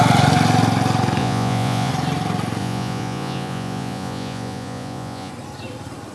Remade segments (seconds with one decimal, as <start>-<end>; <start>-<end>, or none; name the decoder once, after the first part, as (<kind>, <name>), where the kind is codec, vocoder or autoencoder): 1.2-1.9 (vocoder, Vocos); 2.6-5.3